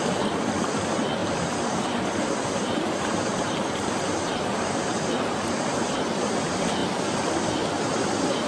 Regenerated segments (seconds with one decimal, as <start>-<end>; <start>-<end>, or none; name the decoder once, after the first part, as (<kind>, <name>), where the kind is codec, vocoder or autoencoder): 1.2-6.0 (vocoder, BigVGAN v2)